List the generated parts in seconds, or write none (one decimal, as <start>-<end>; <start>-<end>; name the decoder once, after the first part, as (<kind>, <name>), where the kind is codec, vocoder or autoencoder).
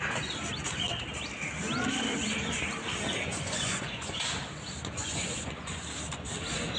3.3-4.2 (vocoder, Vocos); 5.0-5.8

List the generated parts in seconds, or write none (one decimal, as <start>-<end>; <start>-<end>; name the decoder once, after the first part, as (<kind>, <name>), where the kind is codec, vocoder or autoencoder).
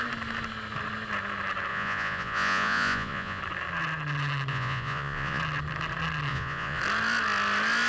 1.7-3.4 (vocoder, Vocos); 4.5-5.4; 6.3-6.8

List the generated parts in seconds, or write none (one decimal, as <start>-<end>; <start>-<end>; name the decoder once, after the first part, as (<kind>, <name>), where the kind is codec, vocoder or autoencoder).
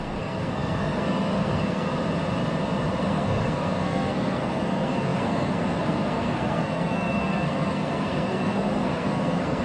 0.0-1.9 (codec, SNAC); 3.0-9.6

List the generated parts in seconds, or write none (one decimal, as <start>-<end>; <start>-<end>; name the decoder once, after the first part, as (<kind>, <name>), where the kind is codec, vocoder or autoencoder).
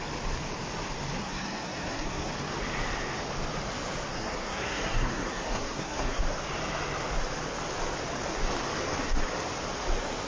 1.2-2.3 (codec, SNAC); 4.1-6.2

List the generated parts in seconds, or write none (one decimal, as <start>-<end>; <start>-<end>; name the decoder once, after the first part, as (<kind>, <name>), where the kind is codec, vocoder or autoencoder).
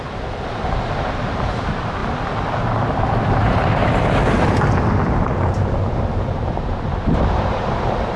0.0-2.0 (vocoder, BigVGAN v2); 2.6-3.8; 5.5-8.2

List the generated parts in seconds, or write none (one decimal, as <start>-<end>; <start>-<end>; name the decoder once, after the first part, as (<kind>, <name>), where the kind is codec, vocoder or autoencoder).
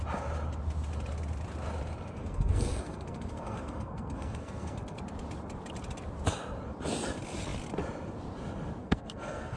2.2-5.0 (codec, SNAC); 8.8-9.6